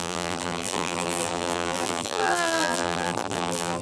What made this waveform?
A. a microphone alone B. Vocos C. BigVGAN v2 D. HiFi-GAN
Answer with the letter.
C